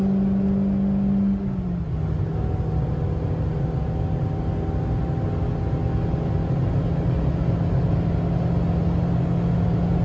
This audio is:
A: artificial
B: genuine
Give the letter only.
B